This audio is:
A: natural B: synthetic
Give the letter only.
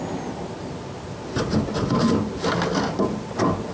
A